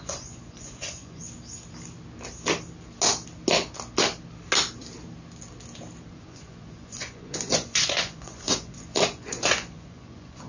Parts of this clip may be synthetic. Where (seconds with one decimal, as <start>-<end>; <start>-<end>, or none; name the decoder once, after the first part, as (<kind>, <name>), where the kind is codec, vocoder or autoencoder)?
0.0-1.2 (vocoder, Vocos); 6.1-10.5